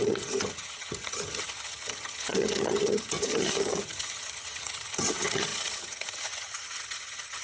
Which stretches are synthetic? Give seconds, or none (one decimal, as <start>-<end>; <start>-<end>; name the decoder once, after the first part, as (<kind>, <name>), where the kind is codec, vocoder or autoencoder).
0.0-7.4 (vocoder, HiFi-GAN)